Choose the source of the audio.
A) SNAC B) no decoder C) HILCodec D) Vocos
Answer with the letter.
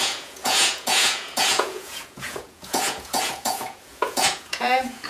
D